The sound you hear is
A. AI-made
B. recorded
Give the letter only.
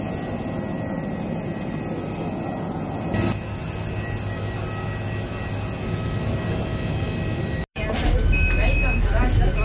B